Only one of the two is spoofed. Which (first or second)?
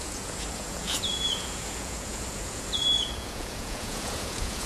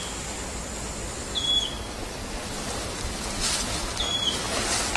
first